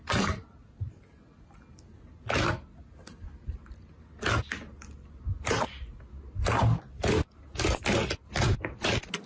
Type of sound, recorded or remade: recorded